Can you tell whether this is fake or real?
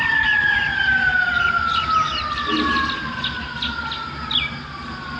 real